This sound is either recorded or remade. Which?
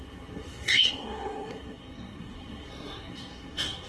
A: remade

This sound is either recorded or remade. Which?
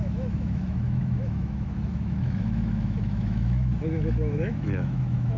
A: remade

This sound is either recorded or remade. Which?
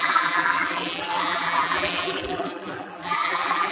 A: remade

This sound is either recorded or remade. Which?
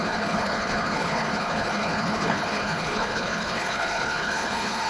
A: remade